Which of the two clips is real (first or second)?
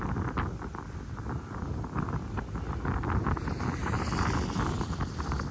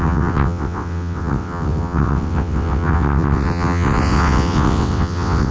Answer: first